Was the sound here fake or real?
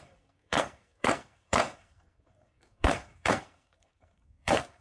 fake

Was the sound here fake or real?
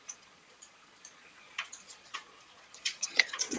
fake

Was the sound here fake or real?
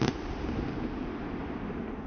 real